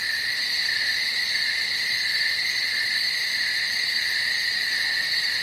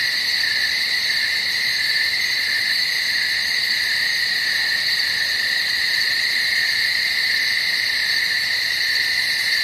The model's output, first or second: second